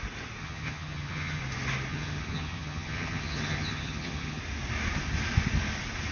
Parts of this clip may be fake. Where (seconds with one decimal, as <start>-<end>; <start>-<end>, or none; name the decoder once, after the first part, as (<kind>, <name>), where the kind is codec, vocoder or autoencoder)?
0.4-1.4 (vocoder, HiFi-GAN); 1.9-4.4